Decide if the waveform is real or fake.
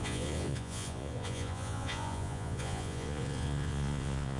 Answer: fake